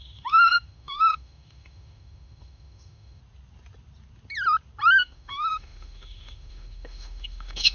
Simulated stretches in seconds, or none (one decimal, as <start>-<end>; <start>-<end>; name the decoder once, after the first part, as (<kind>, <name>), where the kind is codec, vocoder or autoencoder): 0.0-3.2 (autoencoder, DAC-VAE); 5.0-7.7